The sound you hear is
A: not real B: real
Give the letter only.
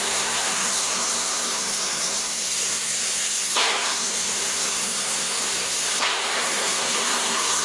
A